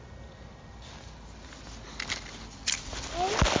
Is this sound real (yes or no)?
yes